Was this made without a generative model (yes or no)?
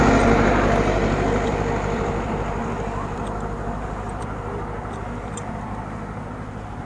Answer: no